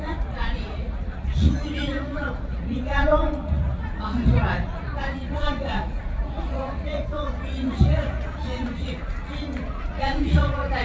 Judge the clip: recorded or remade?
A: remade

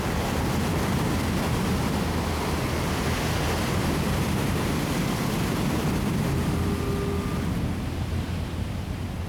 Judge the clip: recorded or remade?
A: recorded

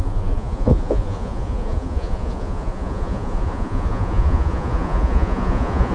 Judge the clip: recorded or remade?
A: remade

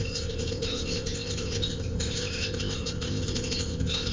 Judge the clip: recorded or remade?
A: remade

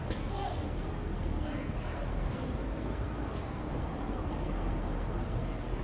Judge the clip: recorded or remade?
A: remade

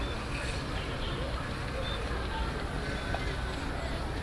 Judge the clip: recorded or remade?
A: recorded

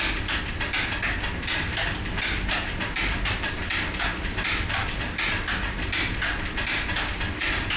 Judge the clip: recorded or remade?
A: recorded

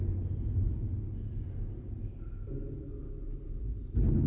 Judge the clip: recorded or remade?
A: recorded